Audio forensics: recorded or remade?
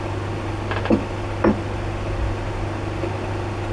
recorded